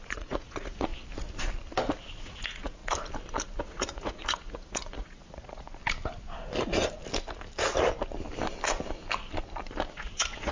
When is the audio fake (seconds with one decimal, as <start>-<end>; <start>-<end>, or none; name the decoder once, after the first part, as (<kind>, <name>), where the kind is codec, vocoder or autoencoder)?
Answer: 0.0-0.9 (vocoder, Vocos); 2.2-2.8; 3.6-5.8; 9.9-10.5